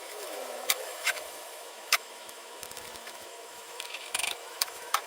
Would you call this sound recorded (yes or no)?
no